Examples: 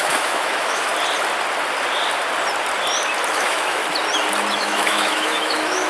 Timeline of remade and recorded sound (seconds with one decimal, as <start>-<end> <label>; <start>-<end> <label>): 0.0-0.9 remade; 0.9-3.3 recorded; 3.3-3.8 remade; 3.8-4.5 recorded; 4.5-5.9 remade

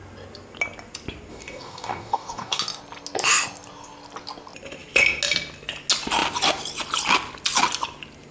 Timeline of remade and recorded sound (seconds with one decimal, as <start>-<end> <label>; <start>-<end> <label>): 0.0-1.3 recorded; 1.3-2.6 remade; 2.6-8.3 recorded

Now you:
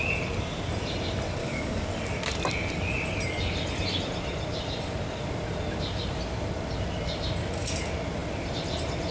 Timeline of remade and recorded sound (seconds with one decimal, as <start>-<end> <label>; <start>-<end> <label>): 0.0-1.4 recorded; 1.4-1.9 remade; 1.9-9.1 recorded